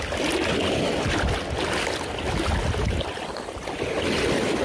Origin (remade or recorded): recorded